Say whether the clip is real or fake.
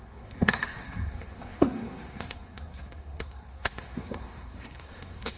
fake